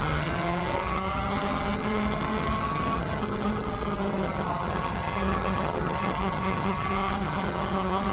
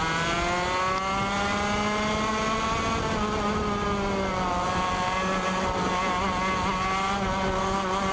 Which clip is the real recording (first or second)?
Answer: second